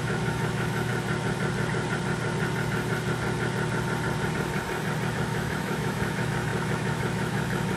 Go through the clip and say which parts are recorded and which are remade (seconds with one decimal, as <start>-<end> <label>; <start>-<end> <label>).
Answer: 0.0-0.9 remade; 0.9-5.1 recorded; 5.1-7.8 remade